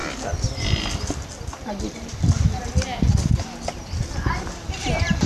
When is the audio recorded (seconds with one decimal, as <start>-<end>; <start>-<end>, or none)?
0.0-5.3